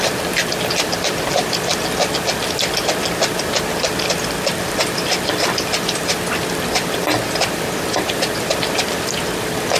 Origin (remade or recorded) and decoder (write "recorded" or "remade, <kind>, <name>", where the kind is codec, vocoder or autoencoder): recorded